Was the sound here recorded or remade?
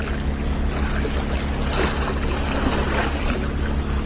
recorded